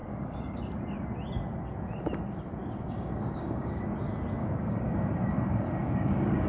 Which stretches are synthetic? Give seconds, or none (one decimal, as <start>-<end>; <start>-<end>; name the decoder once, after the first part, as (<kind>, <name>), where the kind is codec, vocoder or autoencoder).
0.0-0.6 (codec, DAC); 2.6-3.8; 4.4-5.3; 5.8-6.5